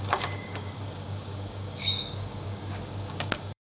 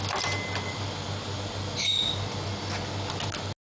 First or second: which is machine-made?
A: first